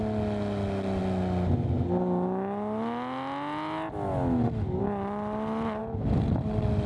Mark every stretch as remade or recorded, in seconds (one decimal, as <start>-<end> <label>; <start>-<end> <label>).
0.0-5.8 recorded; 5.8-6.9 remade